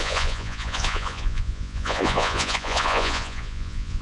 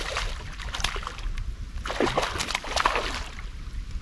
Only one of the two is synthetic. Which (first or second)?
first